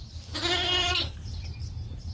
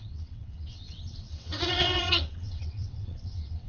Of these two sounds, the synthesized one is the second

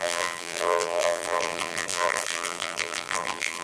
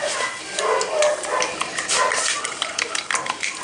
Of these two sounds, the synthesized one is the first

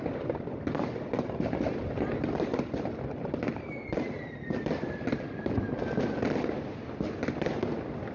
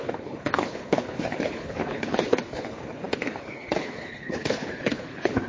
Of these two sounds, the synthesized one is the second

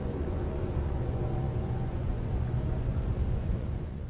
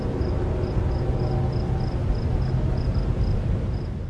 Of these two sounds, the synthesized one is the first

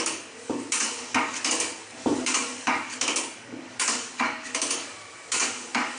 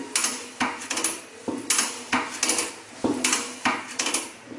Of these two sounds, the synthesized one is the first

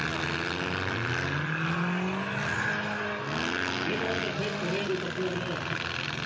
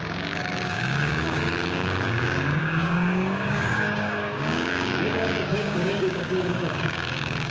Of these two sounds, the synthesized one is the second